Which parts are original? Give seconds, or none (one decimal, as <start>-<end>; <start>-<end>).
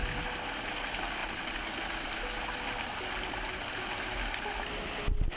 0.0-5.4